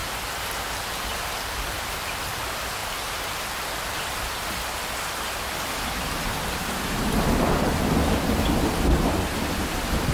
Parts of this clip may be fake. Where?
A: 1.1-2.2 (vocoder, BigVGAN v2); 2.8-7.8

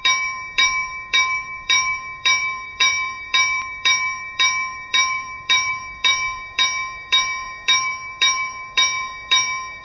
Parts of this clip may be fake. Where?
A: 0.0-9.8 (vocoder, BigVGAN v2)

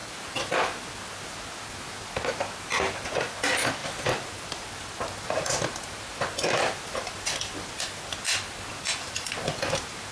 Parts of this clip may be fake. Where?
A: none

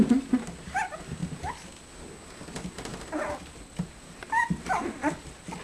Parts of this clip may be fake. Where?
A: 2.9-5.6 (vocoder, BigVGAN v2)

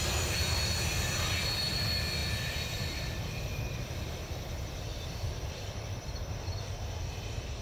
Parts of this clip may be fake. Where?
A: 2.2-6.1 (vocoder, BigVGAN v2)

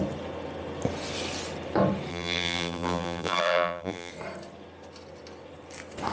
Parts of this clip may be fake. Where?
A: 2.1-4.1 (vocoder, BigVGAN v2)